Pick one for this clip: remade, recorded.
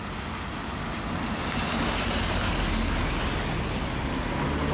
recorded